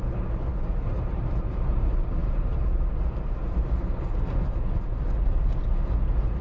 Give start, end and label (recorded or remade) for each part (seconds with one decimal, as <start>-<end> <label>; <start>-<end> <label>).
0.0-6.4 recorded

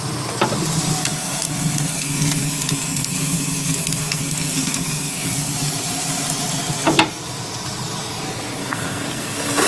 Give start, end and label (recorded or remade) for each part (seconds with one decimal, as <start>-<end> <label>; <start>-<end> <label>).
0.0-1.0 recorded; 1.0-5.5 remade; 5.5-8.6 recorded; 8.6-9.7 remade

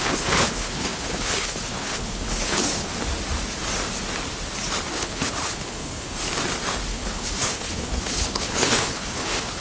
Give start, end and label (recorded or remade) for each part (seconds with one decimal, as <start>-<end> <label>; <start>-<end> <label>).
0.0-2.9 remade; 2.9-4.9 recorded; 4.9-6.3 remade; 6.3-6.9 recorded; 6.9-9.6 remade

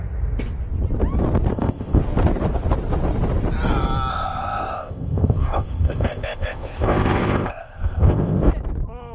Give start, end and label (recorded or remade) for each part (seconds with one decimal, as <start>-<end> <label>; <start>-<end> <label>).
0.0-1.5 recorded; 1.5-2.0 remade; 2.0-4.1 recorded; 4.1-8.5 remade; 8.5-9.1 recorded